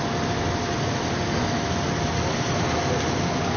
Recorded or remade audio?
recorded